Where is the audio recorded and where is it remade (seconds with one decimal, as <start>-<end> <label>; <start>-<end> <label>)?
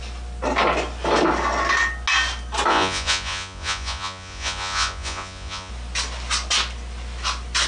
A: 0.0-2.7 recorded; 2.7-5.7 remade; 5.7-7.7 recorded